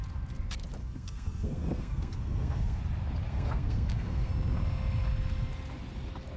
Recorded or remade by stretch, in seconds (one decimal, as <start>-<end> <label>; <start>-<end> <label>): 0.0-0.8 recorded; 0.8-2.8 remade; 2.8-3.3 recorded; 3.3-4.3 remade; 4.3-6.4 recorded